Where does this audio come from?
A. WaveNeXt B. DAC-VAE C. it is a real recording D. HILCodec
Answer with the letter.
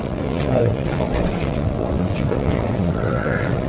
A